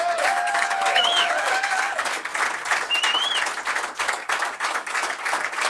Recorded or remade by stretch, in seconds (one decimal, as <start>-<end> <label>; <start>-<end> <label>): 0.0-2.3 remade; 2.3-4.0 recorded; 4.0-5.7 remade